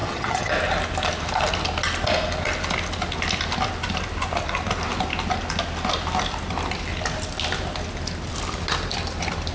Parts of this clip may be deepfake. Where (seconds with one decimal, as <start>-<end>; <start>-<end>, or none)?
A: 0.0-0.5